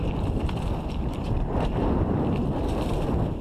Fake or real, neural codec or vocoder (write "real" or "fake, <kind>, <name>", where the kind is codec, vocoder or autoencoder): real